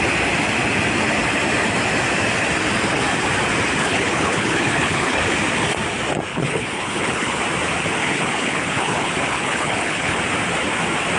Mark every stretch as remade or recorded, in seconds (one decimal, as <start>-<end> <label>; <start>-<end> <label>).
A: 0.0-3.8 recorded; 3.8-5.2 remade; 5.2-6.3 recorded; 6.3-7.4 remade; 7.4-8.0 recorded; 8.0-10.2 remade; 10.2-11.2 recorded